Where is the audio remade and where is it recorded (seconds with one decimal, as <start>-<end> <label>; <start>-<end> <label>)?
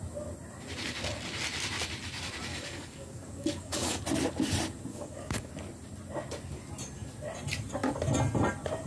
0.0-2.5 recorded; 2.5-4.0 remade; 4.0-4.9 recorded; 4.9-5.5 remade; 5.5-8.9 recorded